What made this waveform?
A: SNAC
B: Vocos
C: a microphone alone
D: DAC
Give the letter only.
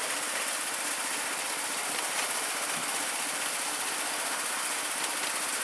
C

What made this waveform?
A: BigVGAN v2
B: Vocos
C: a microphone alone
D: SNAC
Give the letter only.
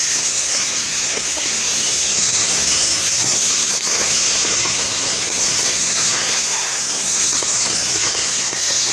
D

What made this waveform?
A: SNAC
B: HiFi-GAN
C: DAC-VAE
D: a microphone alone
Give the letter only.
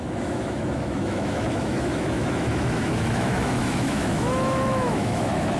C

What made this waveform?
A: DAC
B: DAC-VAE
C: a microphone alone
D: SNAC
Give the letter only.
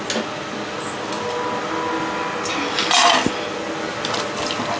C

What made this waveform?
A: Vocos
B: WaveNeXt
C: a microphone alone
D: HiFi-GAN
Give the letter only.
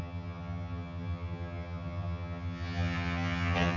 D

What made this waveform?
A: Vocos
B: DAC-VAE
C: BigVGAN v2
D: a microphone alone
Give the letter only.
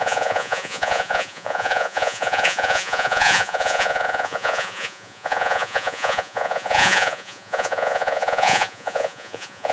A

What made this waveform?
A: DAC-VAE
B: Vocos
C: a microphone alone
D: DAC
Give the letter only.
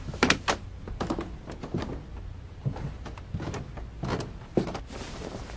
C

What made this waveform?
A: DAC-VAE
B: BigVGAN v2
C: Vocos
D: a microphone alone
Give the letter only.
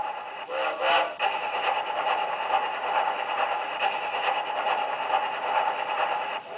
D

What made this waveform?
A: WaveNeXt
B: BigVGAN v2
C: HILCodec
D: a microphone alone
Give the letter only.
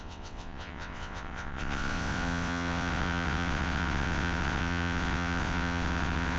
A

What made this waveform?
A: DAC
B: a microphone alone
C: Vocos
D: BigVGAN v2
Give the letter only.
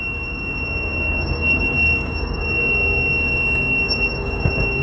A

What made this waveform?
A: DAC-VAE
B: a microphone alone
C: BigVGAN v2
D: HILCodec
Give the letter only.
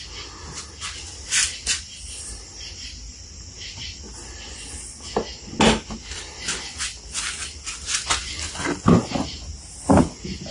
B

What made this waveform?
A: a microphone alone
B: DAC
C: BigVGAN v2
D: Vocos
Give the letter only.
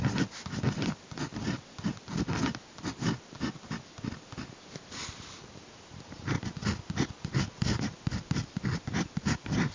A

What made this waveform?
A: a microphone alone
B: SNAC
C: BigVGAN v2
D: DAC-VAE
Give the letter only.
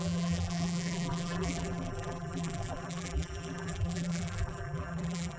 C